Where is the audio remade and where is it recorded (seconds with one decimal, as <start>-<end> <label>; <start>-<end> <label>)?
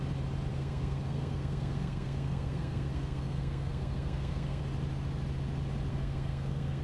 0.0-0.5 recorded; 0.5-4.6 remade; 4.6-5.9 recorded; 5.9-6.8 remade